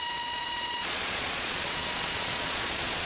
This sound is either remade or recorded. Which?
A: remade